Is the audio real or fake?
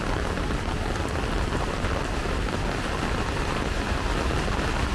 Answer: real